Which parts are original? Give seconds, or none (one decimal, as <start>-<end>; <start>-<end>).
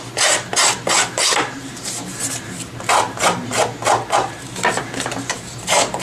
none